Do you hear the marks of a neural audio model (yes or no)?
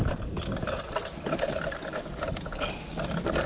no